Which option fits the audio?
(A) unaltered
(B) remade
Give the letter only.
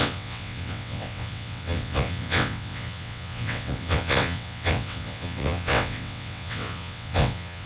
B